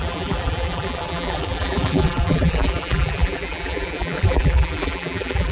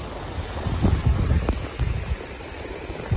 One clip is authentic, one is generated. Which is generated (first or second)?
first